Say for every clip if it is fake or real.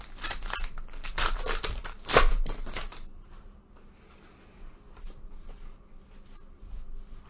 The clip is real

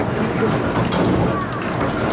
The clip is real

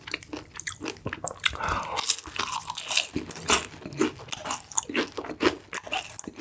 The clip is real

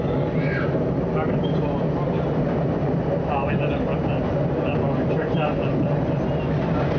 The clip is real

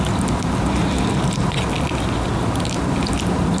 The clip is real